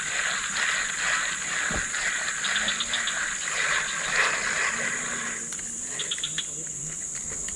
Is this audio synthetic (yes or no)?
no